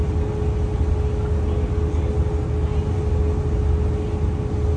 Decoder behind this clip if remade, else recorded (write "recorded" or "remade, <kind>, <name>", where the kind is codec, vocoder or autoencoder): recorded